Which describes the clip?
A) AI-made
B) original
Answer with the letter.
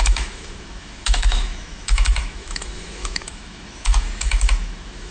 A